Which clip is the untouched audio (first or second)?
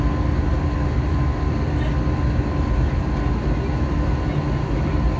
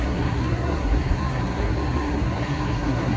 first